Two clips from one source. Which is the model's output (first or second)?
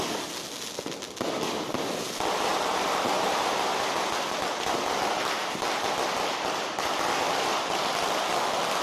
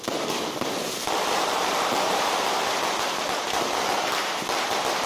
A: second